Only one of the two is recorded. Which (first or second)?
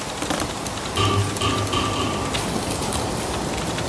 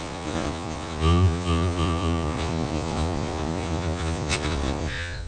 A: first